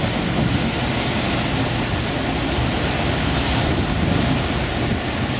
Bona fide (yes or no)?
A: yes